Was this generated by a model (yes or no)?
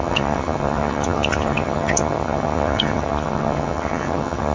yes